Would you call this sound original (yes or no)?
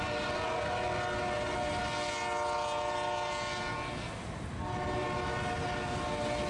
yes